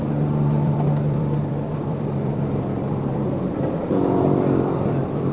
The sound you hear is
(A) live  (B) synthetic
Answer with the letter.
B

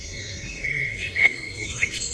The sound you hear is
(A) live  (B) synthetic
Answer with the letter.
B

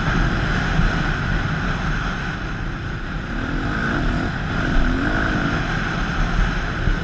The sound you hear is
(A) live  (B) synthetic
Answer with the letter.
A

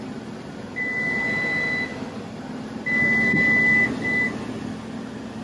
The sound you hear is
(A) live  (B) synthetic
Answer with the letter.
A